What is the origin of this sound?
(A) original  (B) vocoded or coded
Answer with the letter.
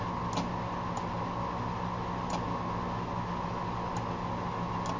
A